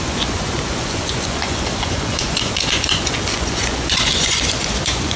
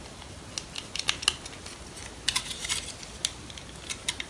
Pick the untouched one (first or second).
second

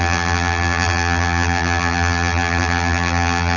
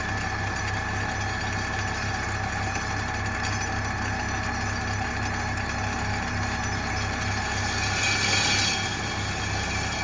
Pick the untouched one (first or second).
second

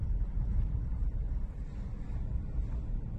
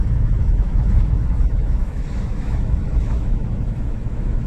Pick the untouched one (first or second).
first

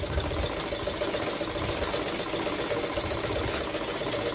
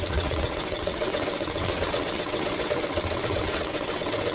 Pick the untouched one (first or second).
first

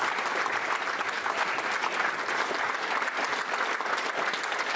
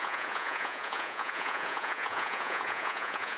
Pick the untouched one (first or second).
first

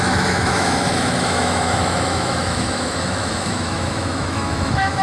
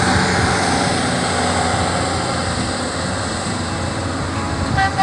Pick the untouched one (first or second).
second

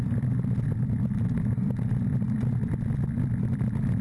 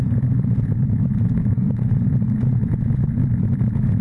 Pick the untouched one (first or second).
first